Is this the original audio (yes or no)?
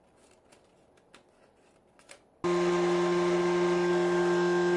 yes